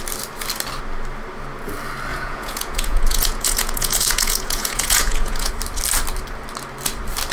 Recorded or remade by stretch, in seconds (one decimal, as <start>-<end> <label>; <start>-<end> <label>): 0.0-2.1 recorded; 2.1-5.5 remade; 5.5-7.3 recorded